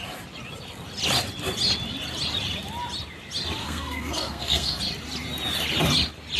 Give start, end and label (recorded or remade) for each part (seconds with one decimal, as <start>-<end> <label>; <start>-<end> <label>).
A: 0.0-3.6 recorded; 3.6-4.8 remade; 4.8-6.4 recorded